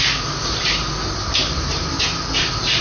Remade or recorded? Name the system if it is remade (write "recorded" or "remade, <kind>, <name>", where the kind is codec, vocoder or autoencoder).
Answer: recorded